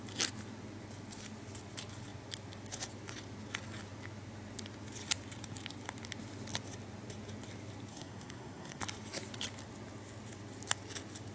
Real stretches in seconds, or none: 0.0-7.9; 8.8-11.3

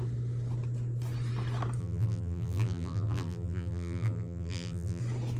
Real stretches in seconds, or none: 0.0-1.8; 5.0-5.4